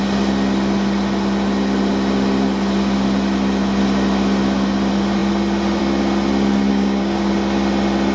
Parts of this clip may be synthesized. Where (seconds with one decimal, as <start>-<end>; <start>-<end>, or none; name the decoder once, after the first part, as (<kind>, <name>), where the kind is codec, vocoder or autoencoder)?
6.7-7.3 (codec, DAC)